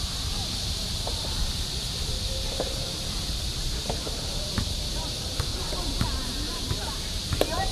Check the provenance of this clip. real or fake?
fake